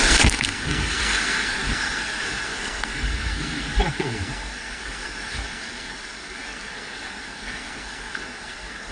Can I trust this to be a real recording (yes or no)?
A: no